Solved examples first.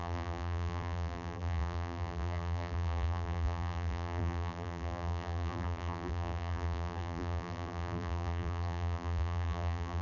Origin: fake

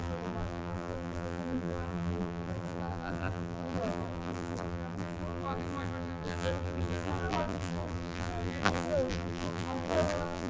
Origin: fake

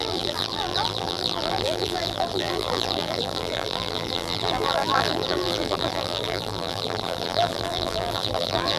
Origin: fake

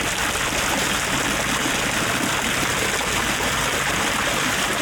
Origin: real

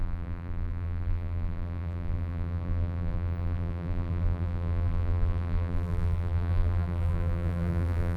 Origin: fake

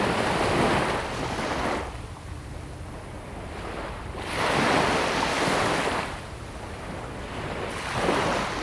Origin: real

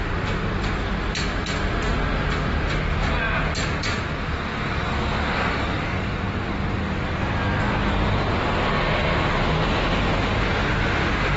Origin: real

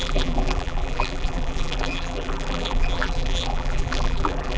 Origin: fake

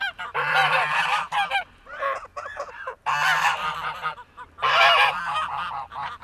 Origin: fake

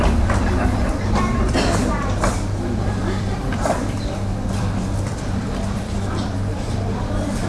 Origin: fake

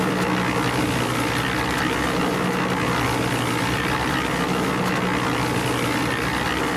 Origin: real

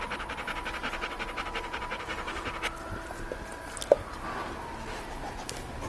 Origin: real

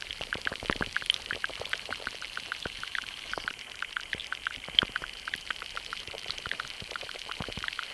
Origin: fake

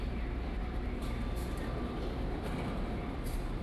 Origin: fake